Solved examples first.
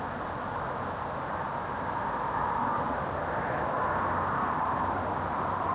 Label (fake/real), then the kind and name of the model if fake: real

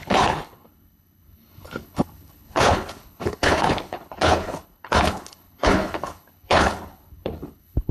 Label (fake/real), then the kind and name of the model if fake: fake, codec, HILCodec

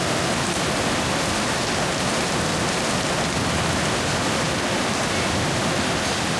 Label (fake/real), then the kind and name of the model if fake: real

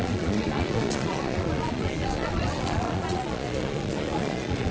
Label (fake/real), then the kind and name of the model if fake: fake, vocoder, Vocos